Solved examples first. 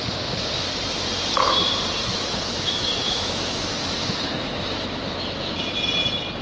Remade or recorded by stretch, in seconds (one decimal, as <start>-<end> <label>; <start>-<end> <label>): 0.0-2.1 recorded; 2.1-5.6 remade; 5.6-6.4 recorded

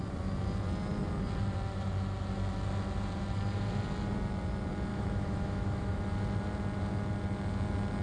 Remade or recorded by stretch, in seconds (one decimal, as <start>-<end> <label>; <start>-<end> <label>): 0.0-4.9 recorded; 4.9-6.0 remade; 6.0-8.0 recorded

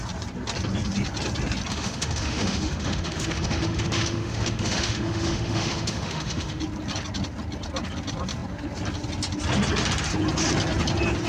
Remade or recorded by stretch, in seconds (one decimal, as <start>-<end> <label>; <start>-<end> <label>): 0.0-1.7 recorded; 1.7-6.6 remade; 6.6-11.3 recorded

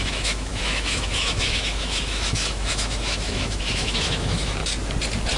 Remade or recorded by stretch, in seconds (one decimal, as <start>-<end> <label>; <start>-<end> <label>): 0.0-4.6 remade; 4.6-5.4 recorded